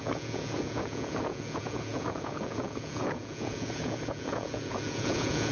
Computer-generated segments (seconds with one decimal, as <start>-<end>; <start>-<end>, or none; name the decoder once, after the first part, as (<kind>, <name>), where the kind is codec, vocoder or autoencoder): 0.0-5.5 (vocoder, Vocos)